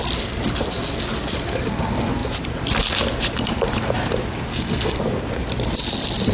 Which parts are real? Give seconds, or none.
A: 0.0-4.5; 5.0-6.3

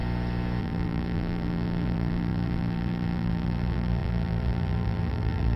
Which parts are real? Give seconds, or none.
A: 0.0-0.6